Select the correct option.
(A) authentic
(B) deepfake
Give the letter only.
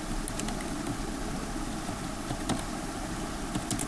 A